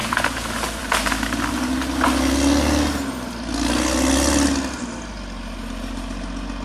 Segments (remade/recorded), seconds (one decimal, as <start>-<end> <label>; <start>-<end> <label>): 0.0-6.6 recorded